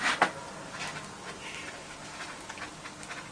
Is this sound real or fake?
real